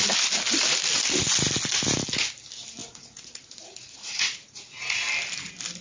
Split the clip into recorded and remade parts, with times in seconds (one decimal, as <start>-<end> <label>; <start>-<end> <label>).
0.0-2.8 recorded; 2.8-4.8 remade; 4.8-5.8 recorded